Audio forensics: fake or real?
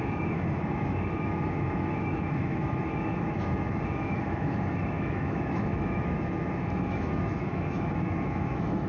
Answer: fake